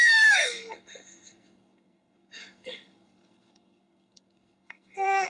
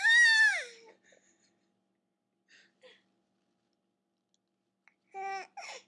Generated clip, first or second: first